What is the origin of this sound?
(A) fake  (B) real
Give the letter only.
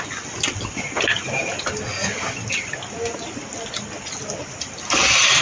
B